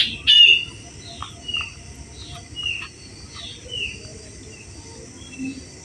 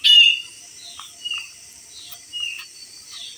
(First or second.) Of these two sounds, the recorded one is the first